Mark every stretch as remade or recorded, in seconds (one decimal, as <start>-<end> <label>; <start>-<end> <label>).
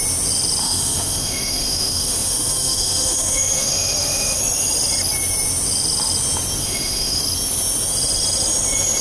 0.0-0.6 recorded; 0.6-4.4 remade; 4.4-6.6 recorded; 6.6-7.2 remade; 7.2-9.0 recorded